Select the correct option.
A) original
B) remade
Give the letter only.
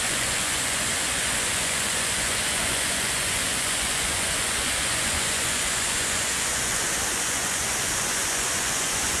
B